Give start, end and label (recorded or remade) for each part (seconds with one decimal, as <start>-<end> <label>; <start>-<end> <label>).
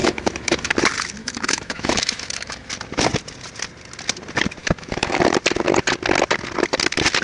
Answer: 0.0-0.7 remade; 0.7-1.2 recorded; 1.2-2.7 remade; 2.7-4.6 recorded; 4.6-5.2 remade; 5.2-7.2 recorded